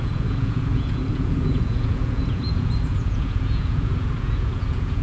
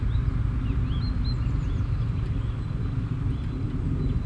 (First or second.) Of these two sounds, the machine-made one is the first